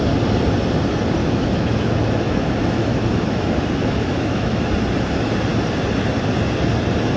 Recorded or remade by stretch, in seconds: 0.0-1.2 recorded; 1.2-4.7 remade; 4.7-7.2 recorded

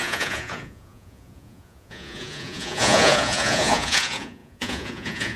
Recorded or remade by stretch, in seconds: 0.0-5.4 remade

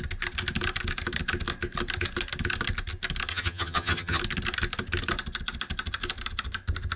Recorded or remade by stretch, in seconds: 0.0-3.3 recorded; 3.3-4.2 remade; 4.2-7.0 recorded

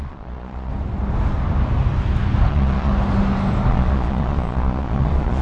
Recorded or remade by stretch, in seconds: 0.0-0.7 remade; 0.7-2.5 recorded; 2.5-2.9 remade; 2.9-3.7 recorded; 3.7-5.4 remade

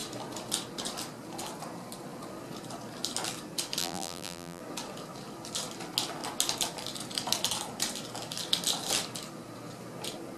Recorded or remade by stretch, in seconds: 0.0-3.8 recorded; 3.8-4.6 remade; 4.6-10.4 recorded

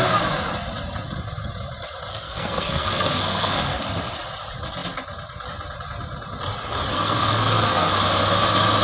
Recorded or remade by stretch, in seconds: 0.0-2.1 recorded; 2.1-3.8 remade; 3.8-6.9 recorded; 6.9-7.9 remade; 7.9-8.8 recorded

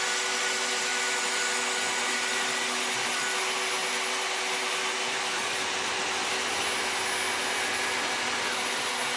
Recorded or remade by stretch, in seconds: 0.0-9.2 recorded

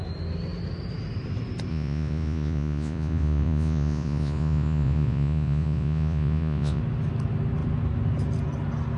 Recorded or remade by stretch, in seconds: 0.0-1.7 recorded; 1.7-6.8 remade; 6.8-9.0 recorded